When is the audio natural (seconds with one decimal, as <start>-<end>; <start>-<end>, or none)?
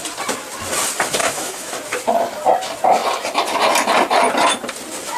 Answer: 0.0-1.2; 1.7-5.2